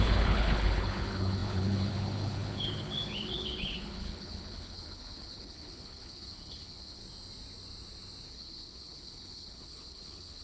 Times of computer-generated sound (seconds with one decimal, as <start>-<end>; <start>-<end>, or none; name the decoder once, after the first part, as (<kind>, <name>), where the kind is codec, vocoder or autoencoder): 0.0-7.0 (codec, HILCodec); 8.3-10.4